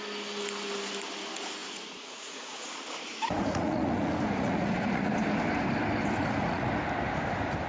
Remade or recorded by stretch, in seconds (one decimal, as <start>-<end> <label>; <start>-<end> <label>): 0.0-1.6 recorded; 1.6-2.7 remade; 2.7-3.1 recorded; 3.1-5.1 remade; 5.1-6.2 recorded; 6.2-6.7 remade; 6.7-7.7 recorded